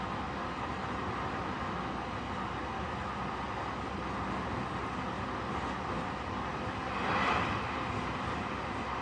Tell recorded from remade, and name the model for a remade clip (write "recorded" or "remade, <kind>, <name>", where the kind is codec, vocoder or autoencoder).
recorded